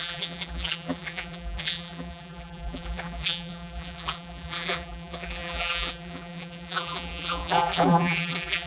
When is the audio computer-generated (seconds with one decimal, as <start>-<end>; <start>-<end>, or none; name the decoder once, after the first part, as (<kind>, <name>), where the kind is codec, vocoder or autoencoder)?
0.0-8.7 (vocoder, BigVGAN v2)